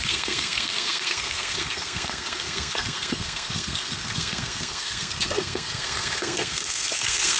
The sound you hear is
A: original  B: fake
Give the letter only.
B